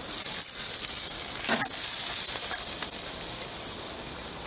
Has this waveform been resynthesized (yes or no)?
no